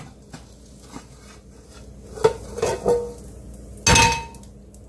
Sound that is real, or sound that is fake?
real